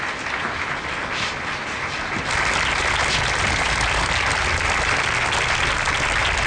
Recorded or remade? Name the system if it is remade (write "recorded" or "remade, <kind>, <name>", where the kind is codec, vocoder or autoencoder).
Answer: recorded